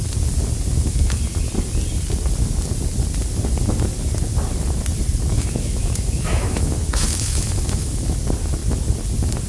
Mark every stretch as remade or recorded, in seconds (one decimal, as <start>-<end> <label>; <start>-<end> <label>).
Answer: 0.0-0.7 recorded; 0.7-1.2 remade; 1.2-5.3 recorded; 5.3-8.2 remade; 8.2-9.5 recorded